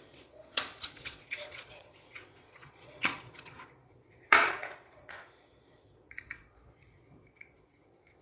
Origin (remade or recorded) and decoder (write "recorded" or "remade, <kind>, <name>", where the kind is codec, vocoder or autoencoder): remade, vocoder, Vocos